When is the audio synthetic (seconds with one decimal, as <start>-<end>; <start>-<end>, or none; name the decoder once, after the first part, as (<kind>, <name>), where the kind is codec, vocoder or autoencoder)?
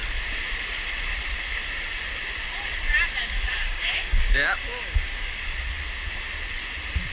3.2-5.4 (codec, DAC)